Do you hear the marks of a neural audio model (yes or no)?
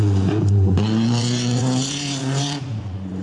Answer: yes